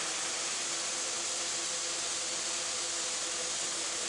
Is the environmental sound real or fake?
real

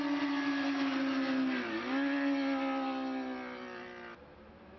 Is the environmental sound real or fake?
real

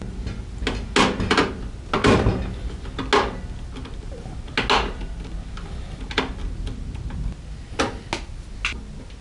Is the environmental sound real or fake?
real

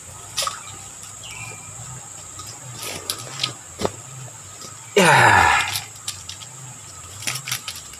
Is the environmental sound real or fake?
real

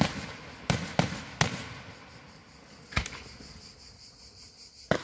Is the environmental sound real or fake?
real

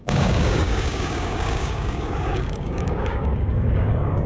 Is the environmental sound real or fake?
fake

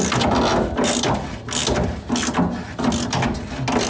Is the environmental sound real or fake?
real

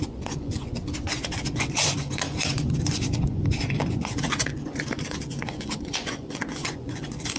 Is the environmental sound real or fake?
fake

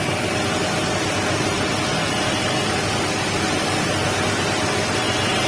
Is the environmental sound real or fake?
real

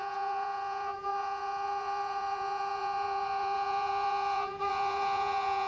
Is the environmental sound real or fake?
fake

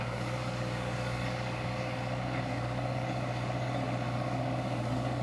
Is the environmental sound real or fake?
fake